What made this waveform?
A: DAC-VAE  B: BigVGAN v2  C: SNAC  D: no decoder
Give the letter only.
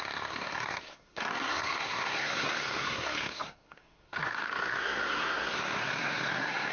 C